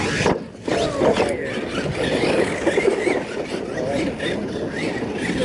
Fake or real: real